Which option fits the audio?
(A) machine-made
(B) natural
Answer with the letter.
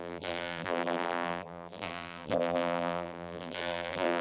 A